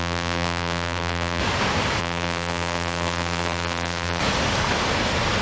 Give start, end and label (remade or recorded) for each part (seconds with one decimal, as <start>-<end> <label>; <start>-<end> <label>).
0.0-1.4 remade; 1.4-2.0 recorded; 2.0-4.2 remade; 4.2-5.4 recorded